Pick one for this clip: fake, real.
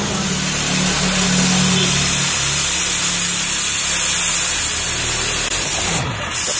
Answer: real